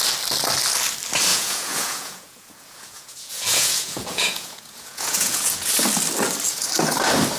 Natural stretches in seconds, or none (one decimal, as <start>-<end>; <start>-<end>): 0.0-1.3; 5.7-7.4